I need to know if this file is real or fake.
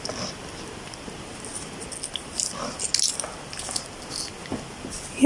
real